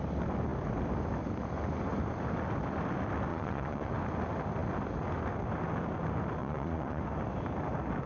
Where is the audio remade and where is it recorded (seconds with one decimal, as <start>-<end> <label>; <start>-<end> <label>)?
0.0-3.3 recorded; 3.3-3.9 remade; 3.9-6.4 recorded; 6.4-7.0 remade; 7.0-8.1 recorded